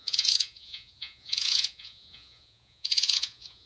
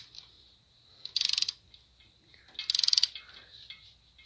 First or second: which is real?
second